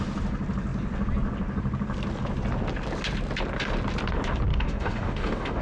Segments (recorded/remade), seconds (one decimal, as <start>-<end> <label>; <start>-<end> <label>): 0.0-4.5 recorded; 4.5-5.6 remade